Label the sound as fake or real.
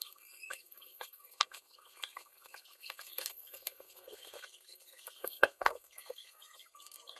fake